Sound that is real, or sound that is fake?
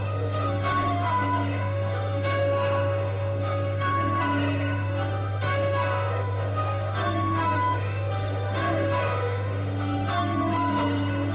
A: fake